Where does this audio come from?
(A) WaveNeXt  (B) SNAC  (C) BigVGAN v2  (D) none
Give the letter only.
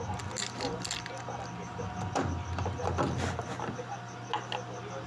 D